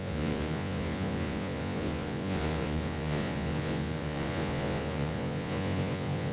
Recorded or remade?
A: remade